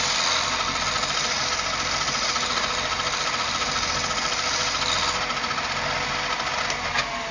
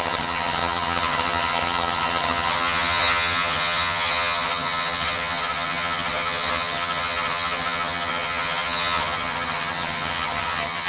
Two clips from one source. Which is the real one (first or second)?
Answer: first